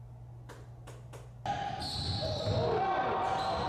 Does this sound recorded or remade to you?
recorded